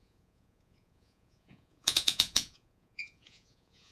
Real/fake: fake